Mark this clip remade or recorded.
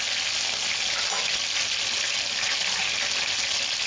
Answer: recorded